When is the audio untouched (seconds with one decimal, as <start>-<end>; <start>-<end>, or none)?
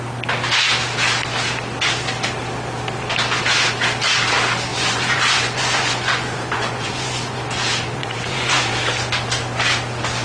0.0-4.7; 7.4-8.0; 8.7-10.2